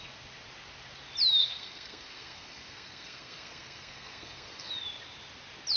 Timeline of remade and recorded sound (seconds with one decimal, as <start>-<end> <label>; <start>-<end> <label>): 0.0-1.4 recorded; 1.4-4.7 remade; 4.7-5.8 recorded